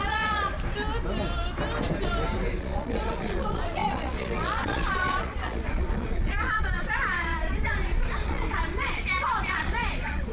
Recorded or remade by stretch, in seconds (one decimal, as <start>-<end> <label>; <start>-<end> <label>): 0.0-0.5 remade; 0.5-2.6 recorded; 2.6-10.3 remade